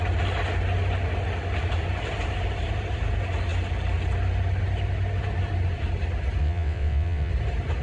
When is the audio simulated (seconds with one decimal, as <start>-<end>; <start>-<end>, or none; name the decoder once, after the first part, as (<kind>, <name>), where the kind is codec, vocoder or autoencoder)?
6.4-7.3 (vocoder, WaveNeXt)